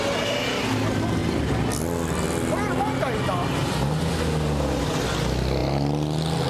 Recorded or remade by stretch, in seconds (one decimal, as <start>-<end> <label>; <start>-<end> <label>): 0.0-6.5 recorded